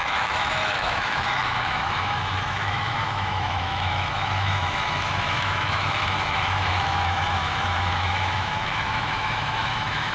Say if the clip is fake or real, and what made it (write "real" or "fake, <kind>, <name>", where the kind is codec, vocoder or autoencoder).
fake, autoencoder, DAC-VAE